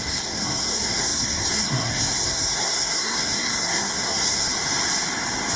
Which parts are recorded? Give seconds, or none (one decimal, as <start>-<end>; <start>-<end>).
4.5-5.6